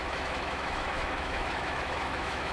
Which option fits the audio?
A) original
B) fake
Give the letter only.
B